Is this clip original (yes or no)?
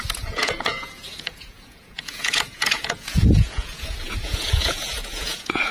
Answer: no